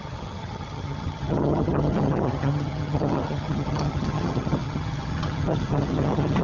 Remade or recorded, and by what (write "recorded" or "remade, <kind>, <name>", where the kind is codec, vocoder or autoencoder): remade, vocoder, HiFi-GAN